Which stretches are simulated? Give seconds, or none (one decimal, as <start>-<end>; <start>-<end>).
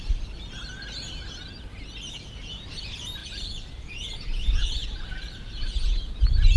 3.2-6.1